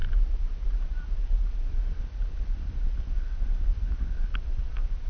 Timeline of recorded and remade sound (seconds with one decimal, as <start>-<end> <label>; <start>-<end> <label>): 0.0-5.1 recorded